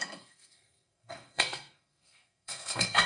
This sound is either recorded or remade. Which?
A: remade